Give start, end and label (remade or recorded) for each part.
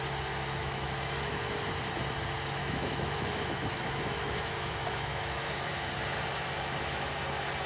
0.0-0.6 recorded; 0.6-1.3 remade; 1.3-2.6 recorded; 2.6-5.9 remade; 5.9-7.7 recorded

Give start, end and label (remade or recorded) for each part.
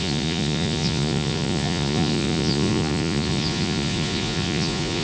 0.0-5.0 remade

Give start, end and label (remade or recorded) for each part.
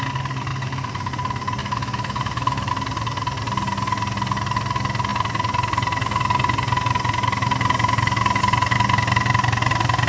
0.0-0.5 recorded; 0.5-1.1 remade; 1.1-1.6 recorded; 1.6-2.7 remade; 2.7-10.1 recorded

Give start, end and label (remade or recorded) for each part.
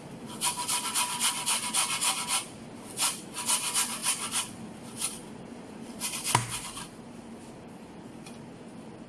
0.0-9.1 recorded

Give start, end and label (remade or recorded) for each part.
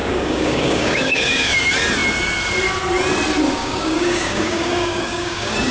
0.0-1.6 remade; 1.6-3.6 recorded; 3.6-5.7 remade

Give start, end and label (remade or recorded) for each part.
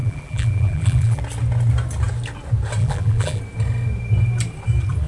0.0-1.2 remade; 1.2-2.8 recorded; 2.8-3.4 remade; 3.4-5.1 recorded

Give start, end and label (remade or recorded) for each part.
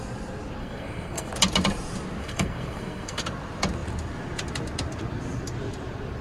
0.0-0.6 recorded; 0.6-1.3 remade; 1.3-2.2 recorded; 2.2-3.2 remade; 3.2-6.2 recorded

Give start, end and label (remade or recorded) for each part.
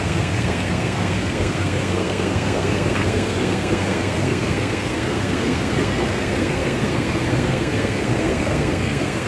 0.0-9.3 remade